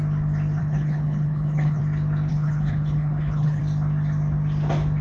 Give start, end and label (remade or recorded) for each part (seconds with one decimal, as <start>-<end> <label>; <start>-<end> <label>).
0.0-0.6 recorded; 0.6-1.8 remade; 1.8-2.3 recorded; 2.3-3.6 remade; 3.6-5.0 recorded